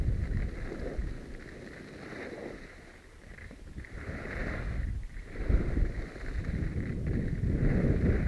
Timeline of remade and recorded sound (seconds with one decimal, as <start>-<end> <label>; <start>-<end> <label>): 0.0-1.0 remade; 1.0-2.6 recorded; 2.6-8.3 remade